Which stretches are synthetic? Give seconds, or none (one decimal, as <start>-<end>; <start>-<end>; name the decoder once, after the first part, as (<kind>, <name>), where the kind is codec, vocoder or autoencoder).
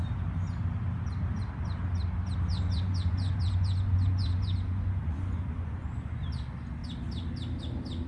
2.5-6.2 (vocoder, Vocos)